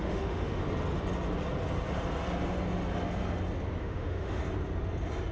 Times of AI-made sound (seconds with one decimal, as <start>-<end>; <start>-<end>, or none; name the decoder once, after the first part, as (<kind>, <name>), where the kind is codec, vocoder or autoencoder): 0.0-0.6 (autoencoder, DAC-VAE); 3.8-4.4